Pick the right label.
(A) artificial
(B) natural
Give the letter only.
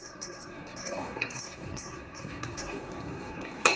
A